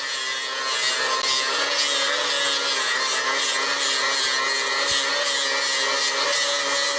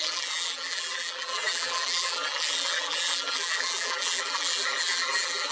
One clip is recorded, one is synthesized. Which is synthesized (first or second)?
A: second